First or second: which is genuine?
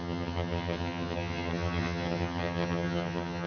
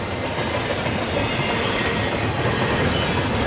second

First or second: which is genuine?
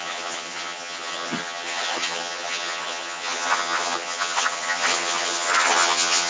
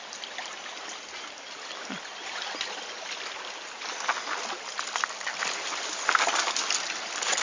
second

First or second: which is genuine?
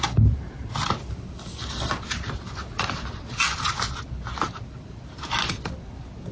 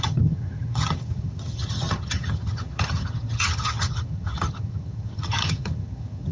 first